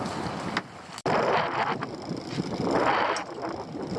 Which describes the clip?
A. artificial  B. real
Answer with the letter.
B